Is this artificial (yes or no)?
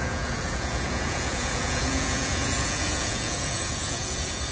yes